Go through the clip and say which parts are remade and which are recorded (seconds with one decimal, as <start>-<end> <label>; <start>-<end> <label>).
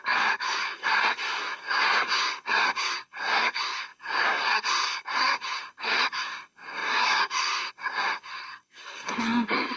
0.0-9.8 remade